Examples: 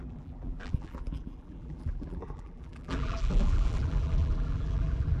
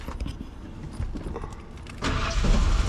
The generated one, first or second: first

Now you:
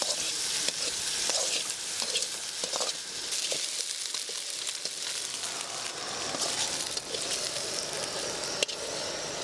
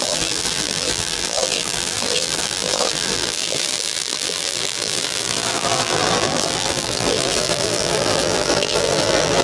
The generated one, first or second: second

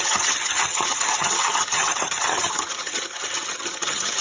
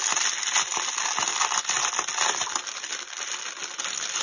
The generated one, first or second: first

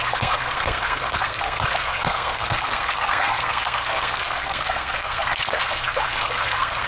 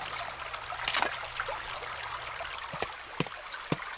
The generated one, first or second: first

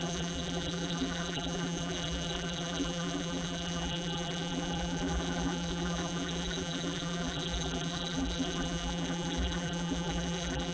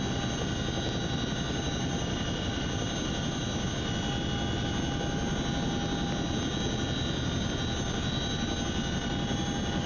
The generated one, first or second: first